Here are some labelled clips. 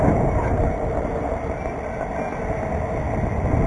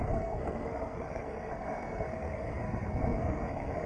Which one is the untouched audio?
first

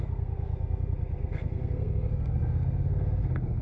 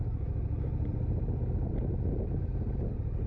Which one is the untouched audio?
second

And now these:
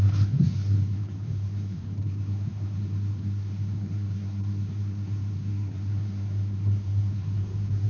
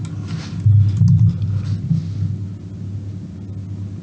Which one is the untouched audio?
second